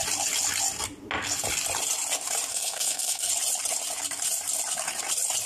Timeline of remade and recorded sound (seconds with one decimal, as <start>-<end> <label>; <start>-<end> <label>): 0.0-2.5 recorded; 2.5-3.3 remade; 3.3-5.5 recorded